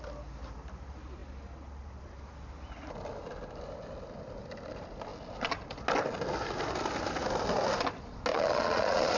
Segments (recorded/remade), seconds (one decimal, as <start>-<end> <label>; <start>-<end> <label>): 0.0-8.3 recorded; 8.3-9.2 remade